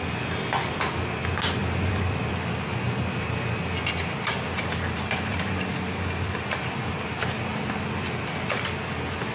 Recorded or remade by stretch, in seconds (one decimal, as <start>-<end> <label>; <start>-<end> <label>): 0.0-1.6 recorded; 1.6-2.3 remade; 2.3-5.3 recorded; 5.3-6.8 remade; 6.8-9.3 recorded